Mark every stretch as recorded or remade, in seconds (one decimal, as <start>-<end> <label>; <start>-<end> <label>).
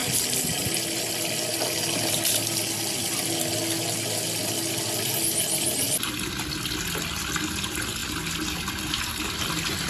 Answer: 0.0-9.9 recorded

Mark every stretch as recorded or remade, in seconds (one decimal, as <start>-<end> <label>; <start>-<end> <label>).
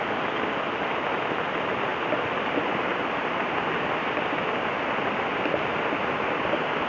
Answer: 0.0-6.9 recorded